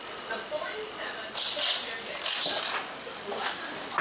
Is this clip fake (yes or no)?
no